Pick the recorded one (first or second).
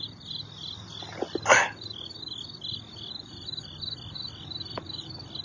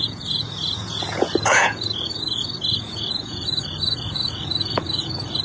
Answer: first